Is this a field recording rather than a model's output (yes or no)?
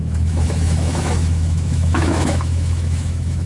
no